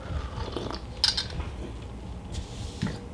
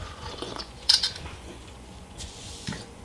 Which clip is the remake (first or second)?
second